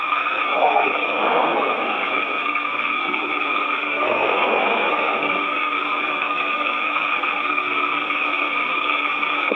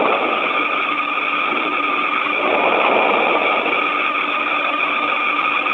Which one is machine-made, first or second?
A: first